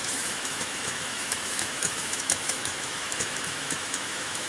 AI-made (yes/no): yes